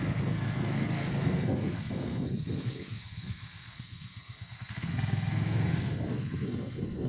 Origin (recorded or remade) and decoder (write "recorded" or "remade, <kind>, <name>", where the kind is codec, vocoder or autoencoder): remade, codec, SNAC